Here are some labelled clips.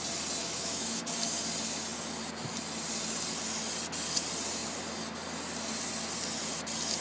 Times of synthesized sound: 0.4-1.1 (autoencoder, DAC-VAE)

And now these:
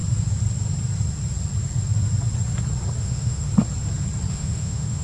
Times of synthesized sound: 3.0-3.5 (autoencoder, DAC-VAE); 4.3-5.0